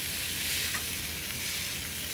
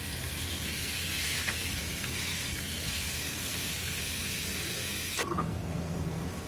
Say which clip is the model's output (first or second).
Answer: second